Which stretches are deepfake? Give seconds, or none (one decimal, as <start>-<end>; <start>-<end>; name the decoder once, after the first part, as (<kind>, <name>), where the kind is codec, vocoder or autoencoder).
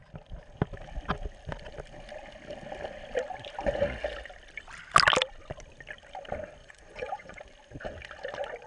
6.6-7.4 (vocoder, Vocos)